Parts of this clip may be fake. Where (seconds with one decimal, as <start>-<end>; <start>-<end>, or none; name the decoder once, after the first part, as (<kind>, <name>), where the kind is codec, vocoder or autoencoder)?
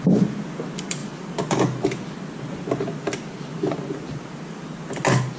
none